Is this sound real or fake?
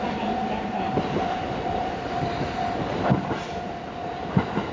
fake